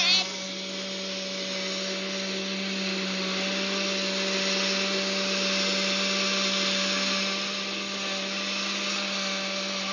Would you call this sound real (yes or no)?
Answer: yes